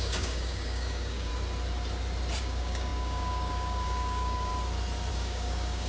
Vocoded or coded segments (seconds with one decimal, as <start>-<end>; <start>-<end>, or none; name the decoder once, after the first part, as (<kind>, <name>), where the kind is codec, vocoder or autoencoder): 0.0-1.3 (codec, DAC); 2.4-4.5; 5.1-5.9

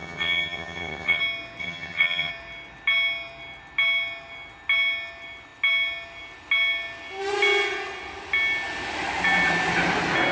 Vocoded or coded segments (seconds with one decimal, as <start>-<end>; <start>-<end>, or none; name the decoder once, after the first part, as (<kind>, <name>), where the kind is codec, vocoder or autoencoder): 0.0-1.2 (vocoder, HiFi-GAN); 1.6-2.3

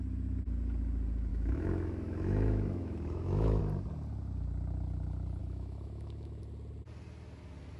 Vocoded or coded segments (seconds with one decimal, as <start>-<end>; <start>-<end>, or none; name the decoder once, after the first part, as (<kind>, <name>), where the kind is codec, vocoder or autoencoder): 1.3-3.6 (autoencoder, DAC-VAE); 5.4-6.4

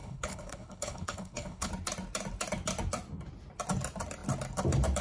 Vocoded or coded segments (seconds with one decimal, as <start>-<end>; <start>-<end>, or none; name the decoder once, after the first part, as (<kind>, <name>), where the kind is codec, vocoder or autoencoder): 0.0-1.7 (codec, HILCodec)

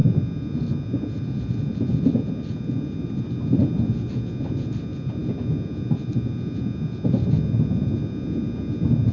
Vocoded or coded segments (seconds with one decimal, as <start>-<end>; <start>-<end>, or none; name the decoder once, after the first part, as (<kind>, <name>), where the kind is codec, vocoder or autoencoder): none